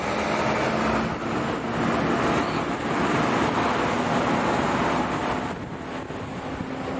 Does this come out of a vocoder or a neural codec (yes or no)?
no